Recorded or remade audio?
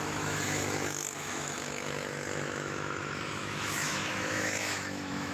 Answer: remade